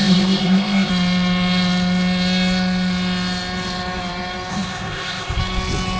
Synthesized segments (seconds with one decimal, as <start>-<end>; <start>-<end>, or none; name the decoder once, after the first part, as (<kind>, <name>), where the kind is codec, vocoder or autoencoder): 0.0-0.9 (codec, ZipCodec); 4.5-5.4